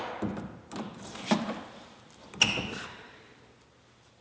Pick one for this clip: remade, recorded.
recorded